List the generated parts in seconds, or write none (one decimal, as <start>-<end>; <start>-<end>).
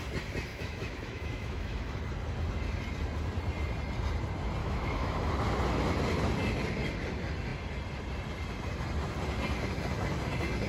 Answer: 0.5-2.0; 4.6-5.3